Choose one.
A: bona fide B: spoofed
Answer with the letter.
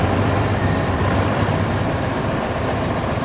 B